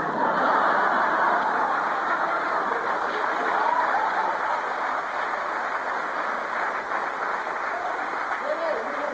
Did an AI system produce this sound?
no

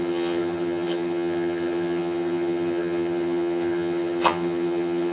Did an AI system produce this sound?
yes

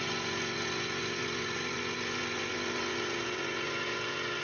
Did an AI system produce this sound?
yes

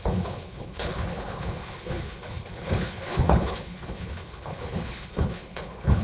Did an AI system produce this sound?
yes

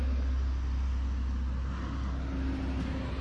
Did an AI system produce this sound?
no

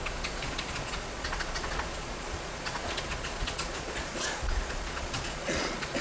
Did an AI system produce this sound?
yes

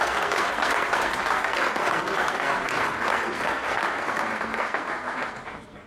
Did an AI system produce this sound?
yes